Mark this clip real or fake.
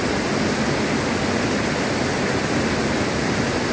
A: real